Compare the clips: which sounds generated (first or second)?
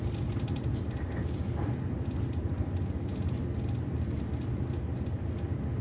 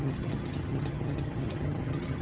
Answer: second